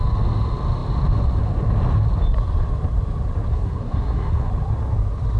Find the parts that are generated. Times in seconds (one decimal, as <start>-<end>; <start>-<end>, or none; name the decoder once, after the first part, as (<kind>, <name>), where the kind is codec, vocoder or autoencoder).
3.5-4.5 (codec, SNAC)